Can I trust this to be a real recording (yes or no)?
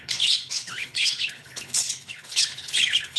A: no